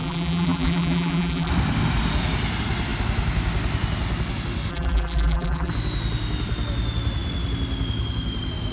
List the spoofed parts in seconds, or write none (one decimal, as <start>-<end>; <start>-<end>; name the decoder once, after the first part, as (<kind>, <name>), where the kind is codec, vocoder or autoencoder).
0.0-1.5 (vocoder, BigVGAN v2); 4.7-5.7